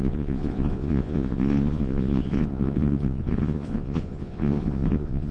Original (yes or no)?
no